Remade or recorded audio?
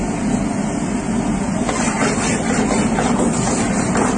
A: recorded